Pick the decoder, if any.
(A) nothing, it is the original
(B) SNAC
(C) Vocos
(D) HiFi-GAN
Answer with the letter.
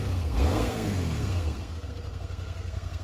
B